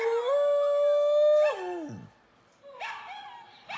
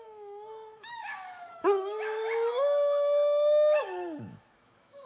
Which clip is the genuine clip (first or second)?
first